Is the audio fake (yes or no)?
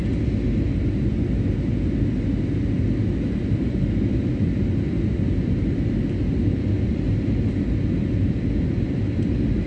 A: no